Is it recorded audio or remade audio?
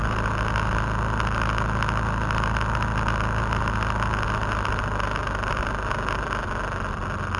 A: recorded